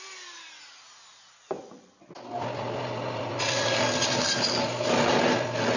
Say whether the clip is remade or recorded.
recorded